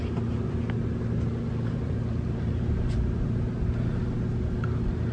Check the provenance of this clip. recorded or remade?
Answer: recorded